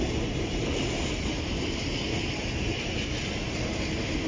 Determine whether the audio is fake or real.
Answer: real